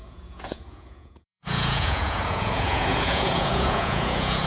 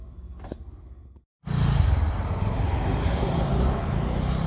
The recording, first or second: second